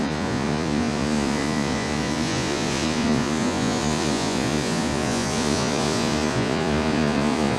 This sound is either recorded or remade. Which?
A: remade